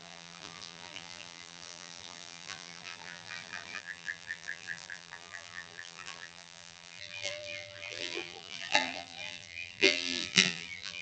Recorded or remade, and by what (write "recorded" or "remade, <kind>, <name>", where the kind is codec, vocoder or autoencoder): remade, vocoder, BigVGAN v2